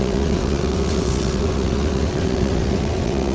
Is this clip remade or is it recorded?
remade